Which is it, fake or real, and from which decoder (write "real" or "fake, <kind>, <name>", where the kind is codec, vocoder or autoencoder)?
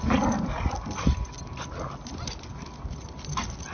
real